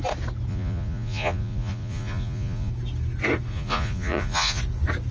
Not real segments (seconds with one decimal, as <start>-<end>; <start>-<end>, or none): 0.5-2.7; 3.5-4.6